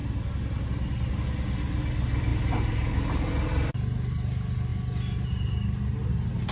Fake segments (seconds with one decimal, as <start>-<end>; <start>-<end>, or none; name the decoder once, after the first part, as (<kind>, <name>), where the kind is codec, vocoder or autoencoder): none